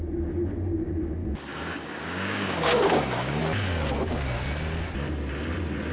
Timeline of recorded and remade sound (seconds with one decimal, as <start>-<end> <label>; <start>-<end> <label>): 0.0-1.2 recorded; 1.2-3.4 remade; 3.4-5.9 recorded